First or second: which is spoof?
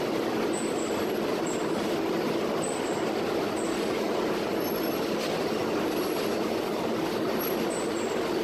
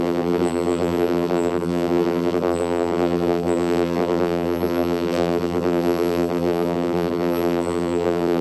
second